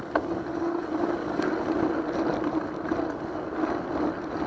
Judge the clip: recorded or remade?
recorded